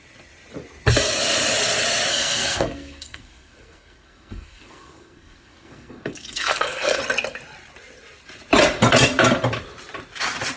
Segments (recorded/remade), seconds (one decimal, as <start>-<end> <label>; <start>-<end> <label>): 0.0-2.1 recorded; 2.1-7.0 remade; 7.0-10.6 recorded